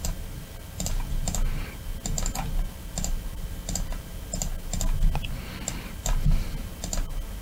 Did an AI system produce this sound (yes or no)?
no